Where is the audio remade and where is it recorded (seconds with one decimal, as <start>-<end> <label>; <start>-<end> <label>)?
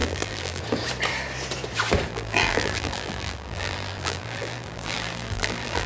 0.0-0.6 remade; 0.6-2.1 recorded; 2.1-5.9 remade